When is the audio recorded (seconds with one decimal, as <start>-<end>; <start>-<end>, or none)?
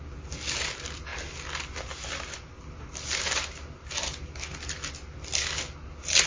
0.0-6.3